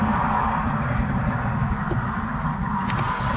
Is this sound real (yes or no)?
yes